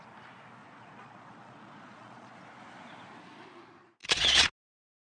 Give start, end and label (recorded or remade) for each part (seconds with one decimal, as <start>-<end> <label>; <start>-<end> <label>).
0.0-0.6 recorded; 0.6-2.4 remade; 2.4-4.0 recorded; 4.0-4.5 remade; 4.5-5.1 recorded